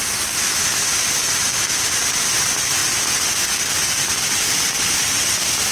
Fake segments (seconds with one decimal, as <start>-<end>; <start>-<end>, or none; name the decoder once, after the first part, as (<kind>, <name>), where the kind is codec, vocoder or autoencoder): none